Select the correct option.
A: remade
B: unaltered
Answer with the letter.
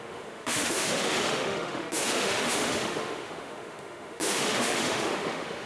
A